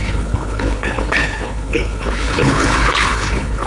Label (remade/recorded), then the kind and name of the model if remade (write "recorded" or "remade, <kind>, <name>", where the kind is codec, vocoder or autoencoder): remade, codec, HILCodec